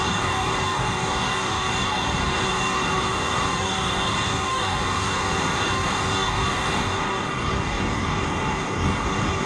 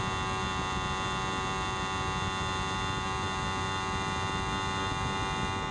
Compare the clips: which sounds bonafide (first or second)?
second